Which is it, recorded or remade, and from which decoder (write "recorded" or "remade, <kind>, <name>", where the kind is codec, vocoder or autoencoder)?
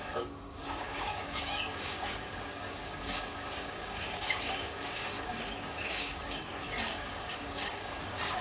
remade, codec, DAC